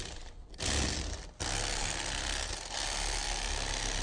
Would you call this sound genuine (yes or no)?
yes